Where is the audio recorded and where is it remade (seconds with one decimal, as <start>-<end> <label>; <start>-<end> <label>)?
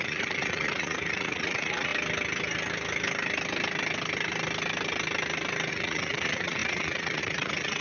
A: 0.0-1.9 remade; 1.9-5.7 recorded; 5.7-7.8 remade